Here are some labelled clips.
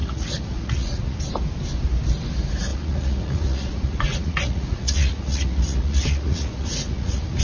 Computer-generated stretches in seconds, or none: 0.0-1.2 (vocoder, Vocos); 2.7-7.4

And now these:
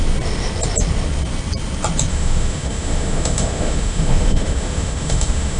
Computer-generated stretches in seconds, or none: 2.1-5.6 (autoencoder, DAC-VAE)

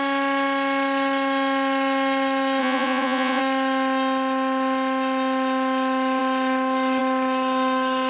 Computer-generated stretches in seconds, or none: 2.6-3.4 (vocoder, Vocos)

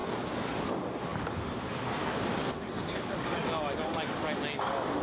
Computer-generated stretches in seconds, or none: none

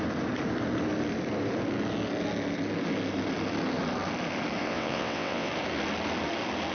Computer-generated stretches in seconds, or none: 4.6-5.5 (vocoder, WaveNeXt)

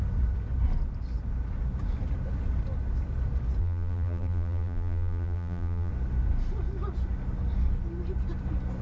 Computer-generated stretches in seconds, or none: 3.6-5.9 (vocoder, BigVGAN v2)

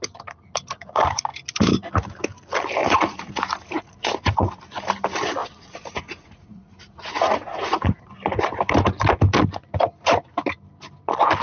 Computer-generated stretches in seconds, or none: 2.8-4.6 (vocoder, Vocos); 5.4-8.1